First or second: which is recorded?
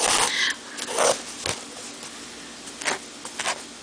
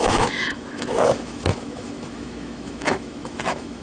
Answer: first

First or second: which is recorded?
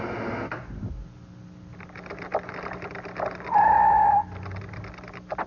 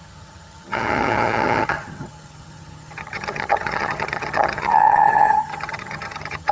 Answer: first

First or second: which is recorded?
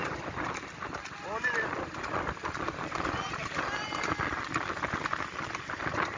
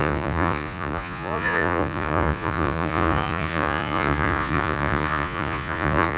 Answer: first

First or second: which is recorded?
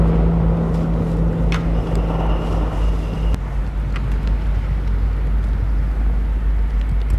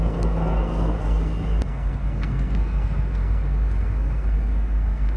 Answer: first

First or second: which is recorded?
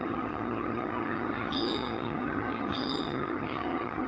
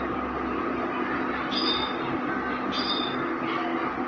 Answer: second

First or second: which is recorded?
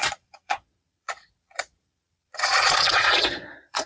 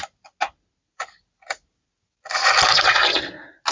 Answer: second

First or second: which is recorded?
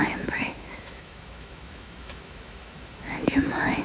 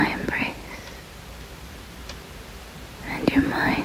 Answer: second